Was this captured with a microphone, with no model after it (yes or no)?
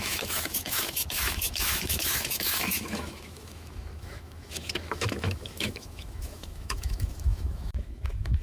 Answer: no